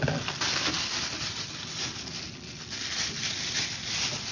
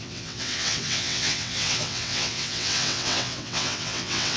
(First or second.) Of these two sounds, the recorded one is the first